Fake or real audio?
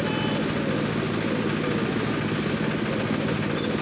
real